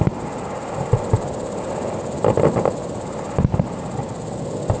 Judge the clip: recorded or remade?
recorded